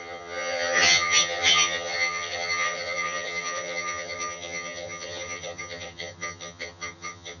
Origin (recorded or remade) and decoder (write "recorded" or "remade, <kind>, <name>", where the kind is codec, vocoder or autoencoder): remade, vocoder, HiFi-GAN